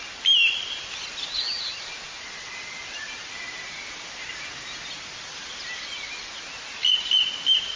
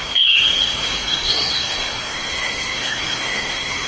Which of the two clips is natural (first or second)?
first